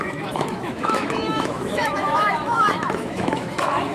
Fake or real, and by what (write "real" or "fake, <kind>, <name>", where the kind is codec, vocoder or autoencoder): fake, autoencoder, DAC-VAE